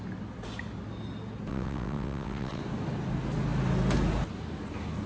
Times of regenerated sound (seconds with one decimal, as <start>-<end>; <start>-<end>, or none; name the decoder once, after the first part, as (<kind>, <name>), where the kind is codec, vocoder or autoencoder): 1.5-2.6 (vocoder, WaveNeXt)